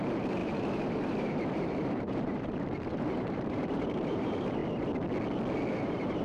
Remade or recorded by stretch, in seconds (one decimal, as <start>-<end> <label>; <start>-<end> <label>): 0.0-4.6 remade; 4.6-5.7 recorded; 5.7-6.2 remade